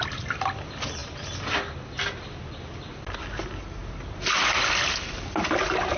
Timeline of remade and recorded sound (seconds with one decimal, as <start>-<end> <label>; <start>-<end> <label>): 0.0-6.0 recorded